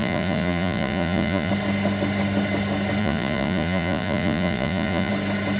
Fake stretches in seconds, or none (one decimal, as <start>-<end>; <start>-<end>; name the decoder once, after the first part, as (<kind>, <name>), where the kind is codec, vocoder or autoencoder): 0.0-1.5 (vocoder, Vocos); 3.0-5.1